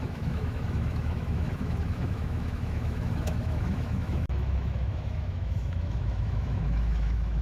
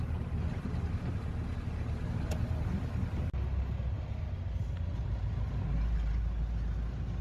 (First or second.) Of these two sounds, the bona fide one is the second